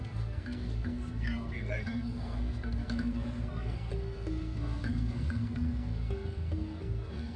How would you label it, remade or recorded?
remade